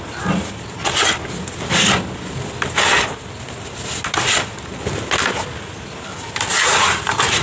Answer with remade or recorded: recorded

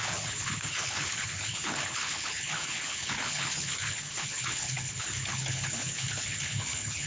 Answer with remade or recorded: remade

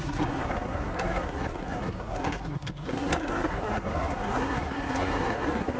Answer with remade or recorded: remade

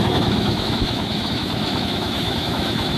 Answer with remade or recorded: remade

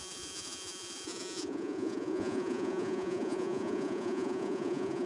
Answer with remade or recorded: remade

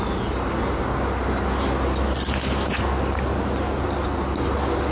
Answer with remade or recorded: recorded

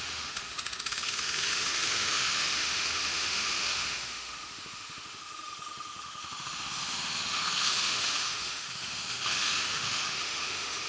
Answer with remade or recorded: remade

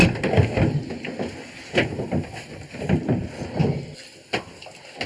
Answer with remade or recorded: recorded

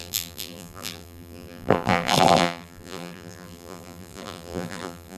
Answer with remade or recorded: remade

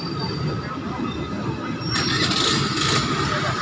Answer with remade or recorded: recorded